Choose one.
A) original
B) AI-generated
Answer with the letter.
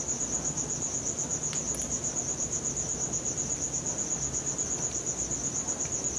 A